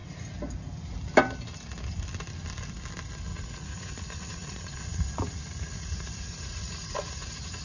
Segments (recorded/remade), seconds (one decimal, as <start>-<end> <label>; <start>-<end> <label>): 0.0-3.3 recorded; 3.3-7.6 remade